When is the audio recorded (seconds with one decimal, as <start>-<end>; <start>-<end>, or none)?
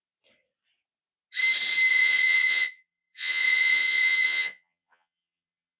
0.0-1.9